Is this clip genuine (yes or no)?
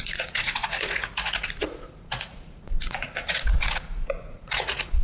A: no